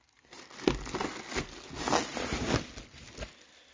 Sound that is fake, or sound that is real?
real